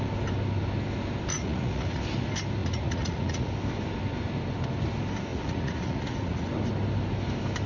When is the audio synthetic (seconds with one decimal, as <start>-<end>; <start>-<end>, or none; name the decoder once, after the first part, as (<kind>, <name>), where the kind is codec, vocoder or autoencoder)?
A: 1.3-2.0 (vocoder, Vocos); 2.6-3.5; 5.3-6.5